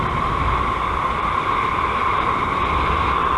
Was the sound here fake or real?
real